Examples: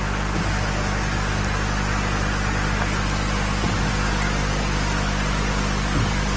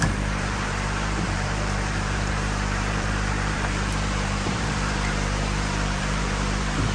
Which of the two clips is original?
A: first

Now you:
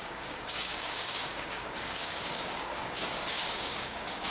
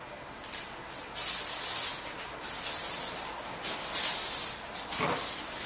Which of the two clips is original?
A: second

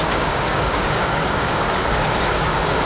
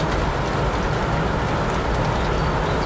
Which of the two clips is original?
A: second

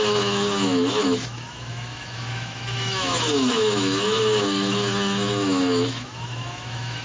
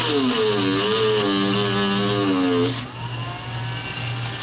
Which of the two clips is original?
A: second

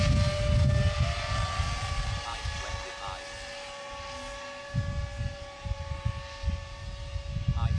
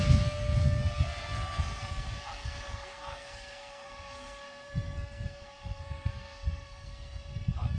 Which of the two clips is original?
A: first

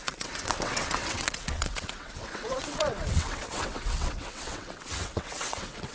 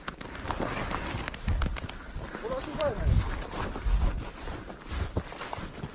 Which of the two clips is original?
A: second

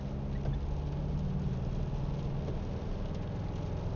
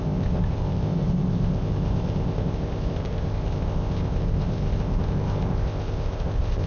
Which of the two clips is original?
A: first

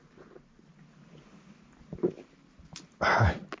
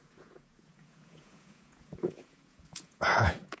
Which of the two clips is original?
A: first